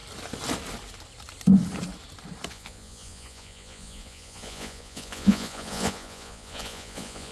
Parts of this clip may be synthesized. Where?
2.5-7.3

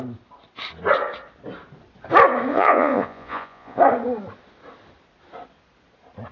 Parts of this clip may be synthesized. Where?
2.5-3.8

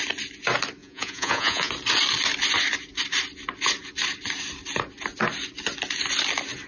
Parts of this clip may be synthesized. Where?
0.8-1.7

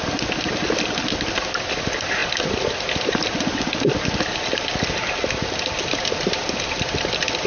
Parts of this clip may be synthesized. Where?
none

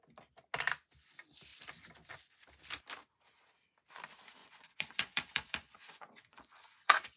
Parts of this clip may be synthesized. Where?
4.4-7.2

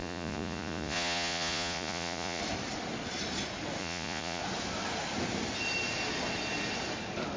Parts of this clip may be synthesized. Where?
0.0-2.4; 3.8-4.4

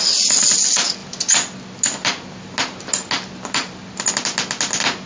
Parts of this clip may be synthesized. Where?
none